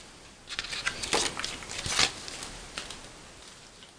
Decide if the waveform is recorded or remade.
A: recorded